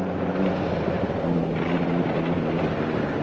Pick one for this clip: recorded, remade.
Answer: recorded